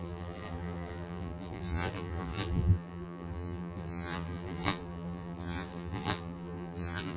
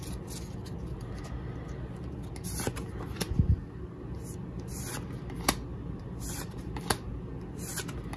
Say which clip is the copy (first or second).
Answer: first